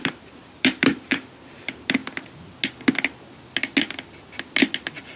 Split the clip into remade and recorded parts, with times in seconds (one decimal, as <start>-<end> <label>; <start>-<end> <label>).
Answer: 0.0-2.0 remade; 2.0-5.2 recorded